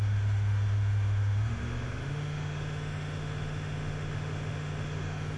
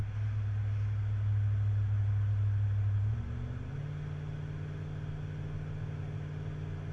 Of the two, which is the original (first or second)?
second